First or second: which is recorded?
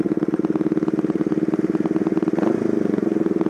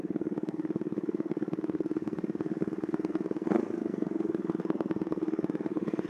first